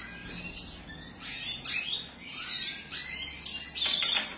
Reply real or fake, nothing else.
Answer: real